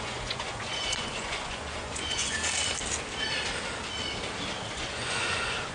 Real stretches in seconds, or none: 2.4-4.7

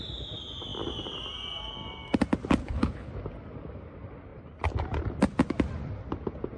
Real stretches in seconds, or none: 0.0-2.6; 3.1-6.6